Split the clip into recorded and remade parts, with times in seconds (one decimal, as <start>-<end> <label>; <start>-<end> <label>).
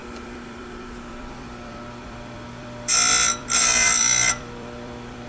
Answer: 0.0-5.3 remade